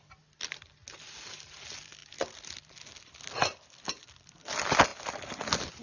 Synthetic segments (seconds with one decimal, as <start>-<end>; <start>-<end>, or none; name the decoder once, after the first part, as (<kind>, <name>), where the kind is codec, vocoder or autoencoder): none